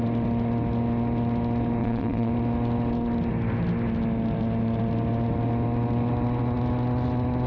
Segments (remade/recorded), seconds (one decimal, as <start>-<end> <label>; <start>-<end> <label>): 0.0-1.8 recorded; 1.8-2.3 remade; 2.3-7.5 recorded